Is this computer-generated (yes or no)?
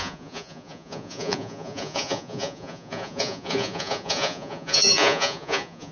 yes